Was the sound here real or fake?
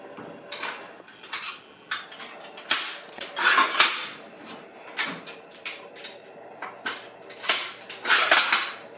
real